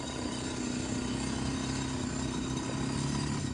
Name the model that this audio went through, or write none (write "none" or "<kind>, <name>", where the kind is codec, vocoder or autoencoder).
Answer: none